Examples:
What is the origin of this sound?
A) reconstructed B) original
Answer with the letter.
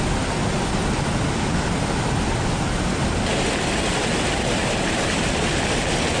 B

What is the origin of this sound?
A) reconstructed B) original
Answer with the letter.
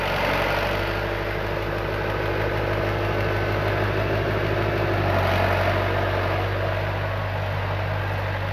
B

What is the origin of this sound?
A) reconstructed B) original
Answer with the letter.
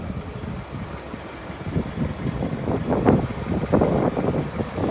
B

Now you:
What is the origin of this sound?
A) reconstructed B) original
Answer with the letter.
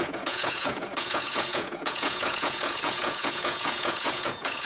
A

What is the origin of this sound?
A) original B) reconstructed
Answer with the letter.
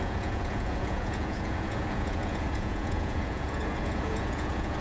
B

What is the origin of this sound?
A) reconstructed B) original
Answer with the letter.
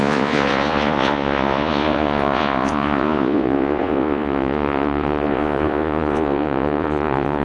A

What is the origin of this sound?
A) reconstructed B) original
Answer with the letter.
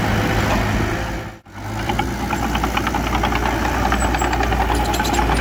B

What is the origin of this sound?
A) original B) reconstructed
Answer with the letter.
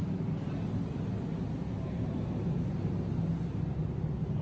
A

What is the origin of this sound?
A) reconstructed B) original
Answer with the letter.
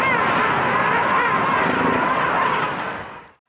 B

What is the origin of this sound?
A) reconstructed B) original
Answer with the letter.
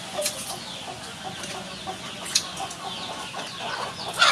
A